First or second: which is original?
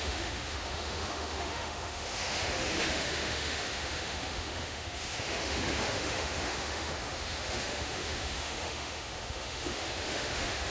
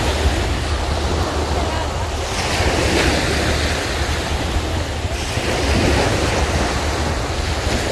second